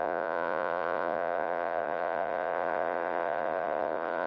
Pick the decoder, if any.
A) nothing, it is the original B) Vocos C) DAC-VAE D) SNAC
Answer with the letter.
B